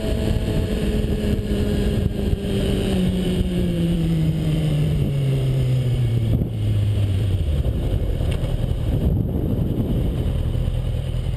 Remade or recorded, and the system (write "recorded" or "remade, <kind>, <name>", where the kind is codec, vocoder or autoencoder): remade, vocoder, BigVGAN v2